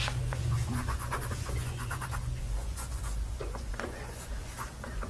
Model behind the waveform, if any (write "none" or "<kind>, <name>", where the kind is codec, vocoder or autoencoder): vocoder, Vocos